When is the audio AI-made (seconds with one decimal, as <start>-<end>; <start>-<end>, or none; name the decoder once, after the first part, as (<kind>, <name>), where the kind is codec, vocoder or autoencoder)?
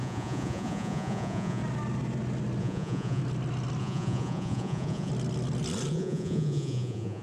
0.0-1.6 (vocoder, Vocos); 2.6-3.2; 3.8-5.1; 5.9-7.2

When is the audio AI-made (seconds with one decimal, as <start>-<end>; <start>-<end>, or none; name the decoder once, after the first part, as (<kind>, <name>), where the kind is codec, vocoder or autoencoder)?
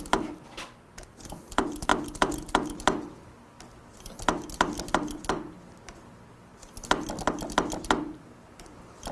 none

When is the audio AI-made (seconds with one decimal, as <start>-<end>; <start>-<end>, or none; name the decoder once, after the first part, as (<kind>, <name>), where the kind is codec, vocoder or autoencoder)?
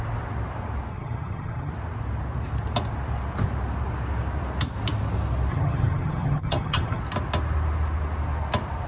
0.9-1.7 (vocoder, HiFi-GAN); 5.5-7.0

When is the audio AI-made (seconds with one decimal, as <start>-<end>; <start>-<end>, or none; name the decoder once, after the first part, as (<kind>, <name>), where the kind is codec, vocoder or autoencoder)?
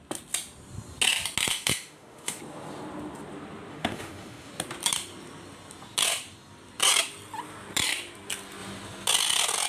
1.5-2.4 (autoencoder, DAC-VAE); 3.7-4.5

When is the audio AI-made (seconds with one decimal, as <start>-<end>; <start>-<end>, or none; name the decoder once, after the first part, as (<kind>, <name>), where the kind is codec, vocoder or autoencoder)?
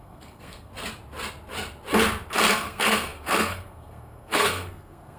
0.0-0.7 (codec, SNAC); 2.5-5.2